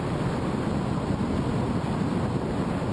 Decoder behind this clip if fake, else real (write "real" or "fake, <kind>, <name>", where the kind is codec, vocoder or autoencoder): real